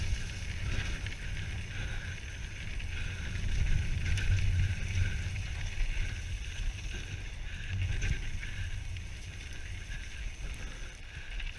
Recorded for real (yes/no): yes